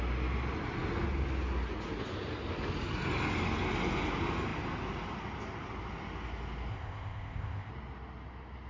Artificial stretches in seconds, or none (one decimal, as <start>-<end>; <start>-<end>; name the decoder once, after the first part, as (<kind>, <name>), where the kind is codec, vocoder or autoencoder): 6.7-7.7 (codec, ZipCodec)